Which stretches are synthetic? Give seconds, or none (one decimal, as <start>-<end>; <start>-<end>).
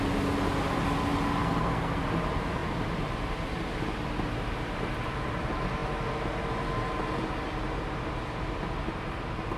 1.4-2.0